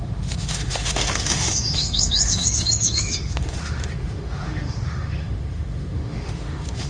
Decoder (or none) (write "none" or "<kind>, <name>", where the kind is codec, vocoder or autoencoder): autoencoder, DAC-VAE